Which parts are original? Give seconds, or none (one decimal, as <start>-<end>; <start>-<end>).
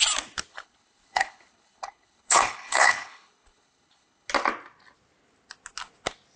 0.0-0.5; 4.3-6.4